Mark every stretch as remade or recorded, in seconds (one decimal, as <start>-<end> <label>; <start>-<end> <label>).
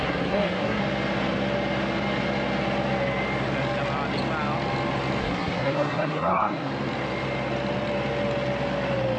0.0-0.8 remade; 0.8-5.2 recorded; 5.2-6.7 remade; 6.7-9.2 recorded